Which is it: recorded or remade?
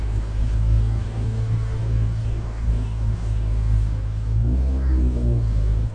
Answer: remade